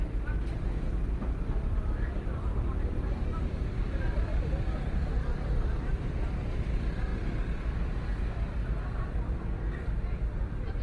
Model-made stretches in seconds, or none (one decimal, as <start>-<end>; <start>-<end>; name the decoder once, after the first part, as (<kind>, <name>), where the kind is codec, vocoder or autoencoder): 0.0-10.8 (vocoder, BigVGAN v2)